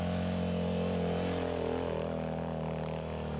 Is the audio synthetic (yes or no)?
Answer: no